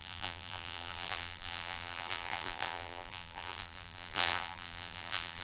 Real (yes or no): no